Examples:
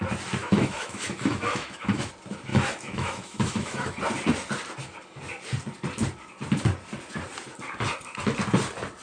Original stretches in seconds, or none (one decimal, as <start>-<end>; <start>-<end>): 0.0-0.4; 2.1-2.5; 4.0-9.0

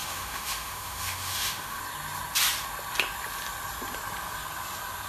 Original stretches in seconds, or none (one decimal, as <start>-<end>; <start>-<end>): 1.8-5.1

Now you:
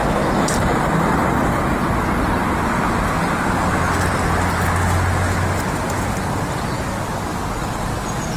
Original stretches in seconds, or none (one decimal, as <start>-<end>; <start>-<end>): 0.0-8.4